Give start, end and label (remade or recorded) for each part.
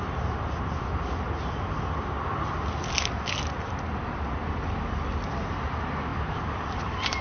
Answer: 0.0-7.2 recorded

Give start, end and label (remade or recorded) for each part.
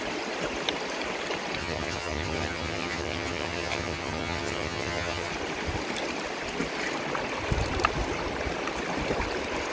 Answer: 0.0-1.6 recorded; 1.6-5.3 remade; 5.3-9.7 recorded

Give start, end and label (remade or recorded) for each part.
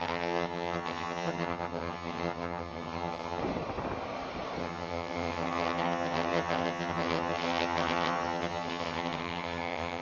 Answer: 0.0-3.4 remade; 3.4-4.6 recorded; 4.6-10.0 remade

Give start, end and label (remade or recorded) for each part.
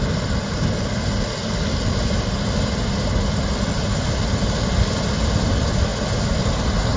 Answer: 0.0-7.0 recorded